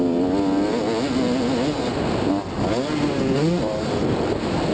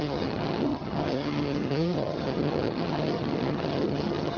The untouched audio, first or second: first